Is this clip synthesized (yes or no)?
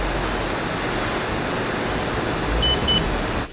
no